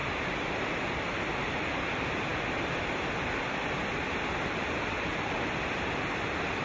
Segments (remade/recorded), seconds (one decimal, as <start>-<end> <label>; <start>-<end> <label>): 0.0-6.6 recorded